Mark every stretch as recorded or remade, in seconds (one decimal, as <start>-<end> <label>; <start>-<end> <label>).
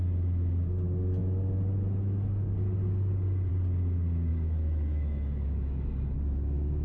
0.0-4.3 recorded; 4.3-5.9 remade; 5.9-6.8 recorded